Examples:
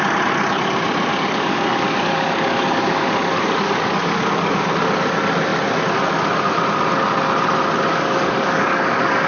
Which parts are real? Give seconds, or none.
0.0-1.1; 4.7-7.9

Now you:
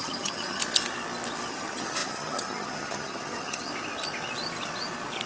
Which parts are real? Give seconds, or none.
0.6-1.5; 3.7-5.3

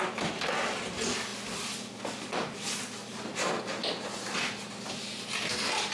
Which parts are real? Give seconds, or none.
0.0-5.9

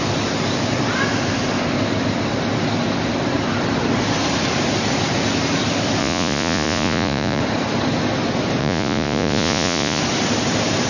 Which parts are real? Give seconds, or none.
0.0-6.0; 7.4-8.6; 10.0-10.9

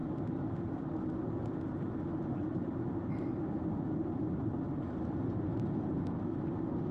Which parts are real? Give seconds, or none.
0.0-6.9